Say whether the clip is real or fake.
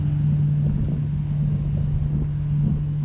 real